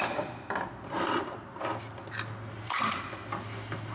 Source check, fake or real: real